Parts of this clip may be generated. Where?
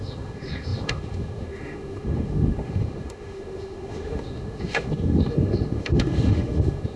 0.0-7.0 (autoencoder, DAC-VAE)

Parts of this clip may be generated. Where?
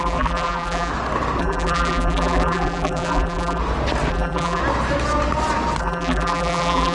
0.0-0.9 (vocoder, BigVGAN v2); 1.4-3.6; 4.1-4.6; 5.8-6.9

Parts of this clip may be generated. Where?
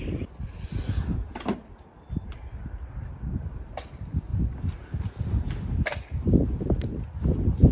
none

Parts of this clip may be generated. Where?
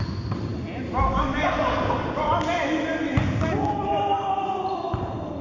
none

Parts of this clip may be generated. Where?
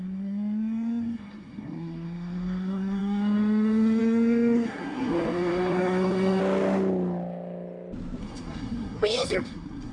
0.0-6.4 (codec, SNAC); 8.2-9.9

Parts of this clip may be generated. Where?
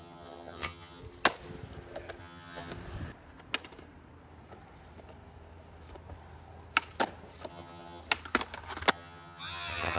0.0-1.0 (vocoder, HiFi-GAN); 2.2-2.7; 7.5-8.0; 8.9-10.0